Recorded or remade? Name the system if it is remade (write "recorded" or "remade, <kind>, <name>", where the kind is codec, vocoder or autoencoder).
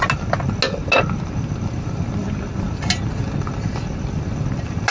recorded